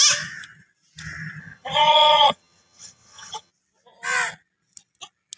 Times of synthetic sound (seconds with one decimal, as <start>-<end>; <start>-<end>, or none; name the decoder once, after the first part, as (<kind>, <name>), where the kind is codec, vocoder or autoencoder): 1.4-3.5 (vocoder, HiFi-GAN)